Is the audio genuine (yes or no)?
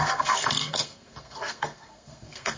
no